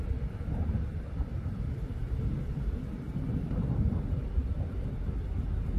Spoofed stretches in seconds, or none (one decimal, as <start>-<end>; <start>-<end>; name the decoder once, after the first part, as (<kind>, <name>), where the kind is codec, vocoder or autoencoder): none